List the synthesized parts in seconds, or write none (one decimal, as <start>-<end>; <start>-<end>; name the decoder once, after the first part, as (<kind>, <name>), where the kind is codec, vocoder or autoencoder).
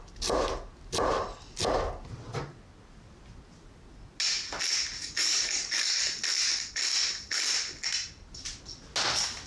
5.0-6.0 (codec, DAC)